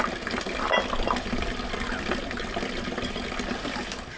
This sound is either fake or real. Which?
real